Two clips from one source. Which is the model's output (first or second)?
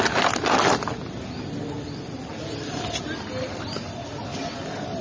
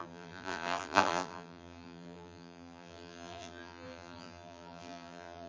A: second